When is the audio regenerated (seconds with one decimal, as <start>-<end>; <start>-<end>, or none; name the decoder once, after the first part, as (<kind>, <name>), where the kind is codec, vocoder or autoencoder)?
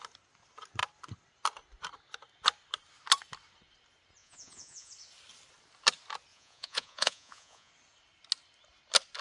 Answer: 4.2-4.9 (vocoder, Vocos); 6.3-7.7